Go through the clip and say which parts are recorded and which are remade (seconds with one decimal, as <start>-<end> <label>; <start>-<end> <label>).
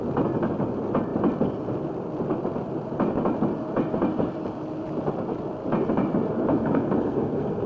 0.0-6.5 recorded; 6.5-7.7 remade